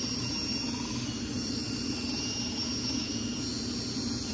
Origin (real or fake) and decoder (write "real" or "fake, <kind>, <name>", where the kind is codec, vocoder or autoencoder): real